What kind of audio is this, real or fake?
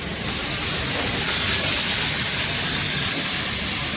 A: real